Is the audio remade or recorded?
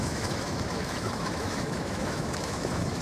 remade